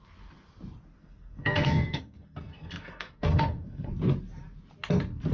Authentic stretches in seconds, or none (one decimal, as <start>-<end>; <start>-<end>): 0.0-1.0; 3.9-5.3